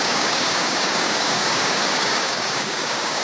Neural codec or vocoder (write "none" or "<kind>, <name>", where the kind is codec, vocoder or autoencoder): codec, DAC